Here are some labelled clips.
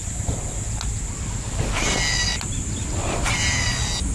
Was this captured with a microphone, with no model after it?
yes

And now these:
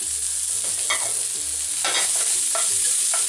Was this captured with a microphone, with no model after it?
yes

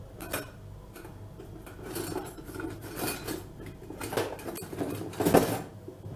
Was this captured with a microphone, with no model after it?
yes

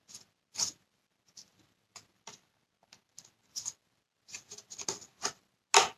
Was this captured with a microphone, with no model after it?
yes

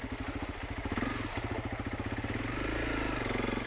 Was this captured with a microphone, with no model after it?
yes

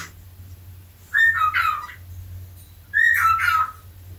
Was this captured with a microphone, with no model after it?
yes